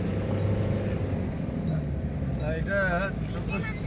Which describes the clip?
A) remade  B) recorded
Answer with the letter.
B